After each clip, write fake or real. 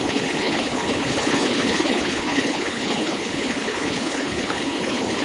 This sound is fake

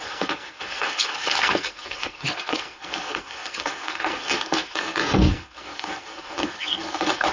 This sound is fake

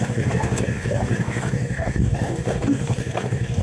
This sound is fake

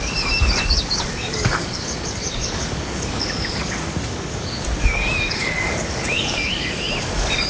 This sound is fake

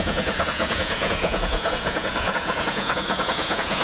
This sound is fake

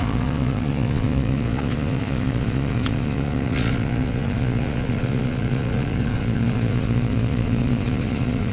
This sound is fake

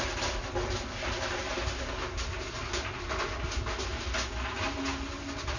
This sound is real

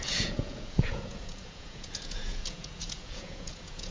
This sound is fake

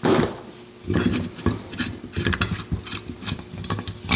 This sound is real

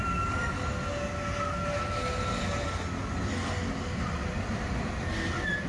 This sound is real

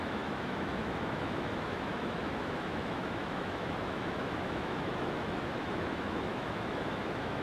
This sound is fake